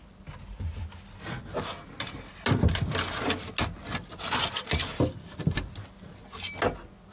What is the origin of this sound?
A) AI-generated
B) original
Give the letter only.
B